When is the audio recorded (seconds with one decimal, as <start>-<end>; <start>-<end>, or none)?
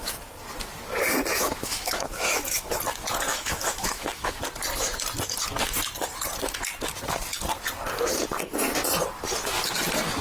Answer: 0.0-1.3; 2.8-3.3; 4.4-10.2